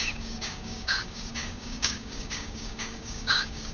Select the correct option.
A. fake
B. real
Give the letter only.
A